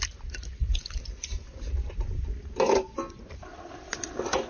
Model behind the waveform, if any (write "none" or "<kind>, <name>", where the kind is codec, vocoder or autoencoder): none